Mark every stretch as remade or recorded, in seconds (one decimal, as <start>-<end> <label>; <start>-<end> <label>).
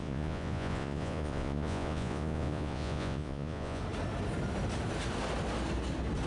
0.0-3.8 remade; 3.8-6.3 recorded